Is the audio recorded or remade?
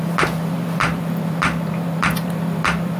remade